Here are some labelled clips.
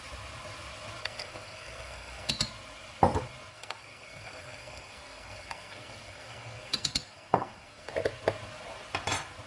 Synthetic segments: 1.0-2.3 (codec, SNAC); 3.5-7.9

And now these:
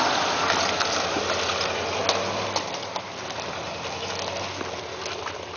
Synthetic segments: none

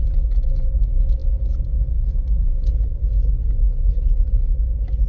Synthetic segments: none